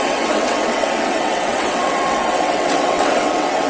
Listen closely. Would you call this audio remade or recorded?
remade